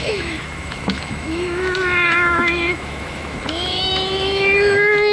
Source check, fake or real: fake